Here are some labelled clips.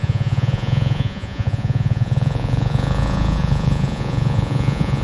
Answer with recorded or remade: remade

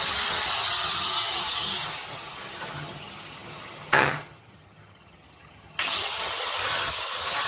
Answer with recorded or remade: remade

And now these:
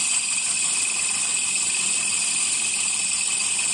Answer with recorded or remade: recorded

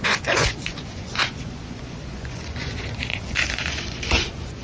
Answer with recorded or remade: remade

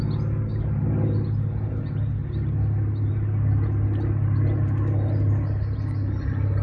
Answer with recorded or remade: recorded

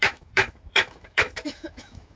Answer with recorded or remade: remade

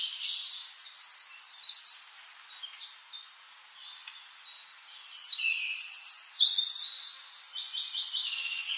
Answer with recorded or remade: recorded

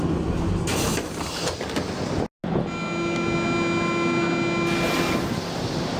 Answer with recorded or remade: recorded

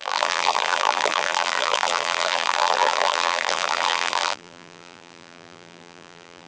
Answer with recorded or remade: remade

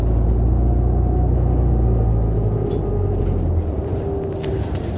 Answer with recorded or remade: recorded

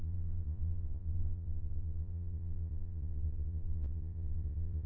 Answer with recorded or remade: remade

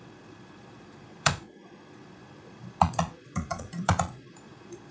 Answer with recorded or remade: remade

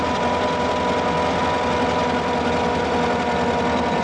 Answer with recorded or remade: recorded